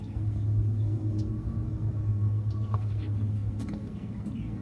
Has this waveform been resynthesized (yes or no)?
yes